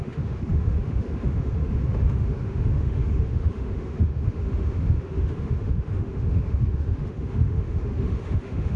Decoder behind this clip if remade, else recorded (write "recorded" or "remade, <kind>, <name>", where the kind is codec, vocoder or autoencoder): remade, autoencoder, DAC-VAE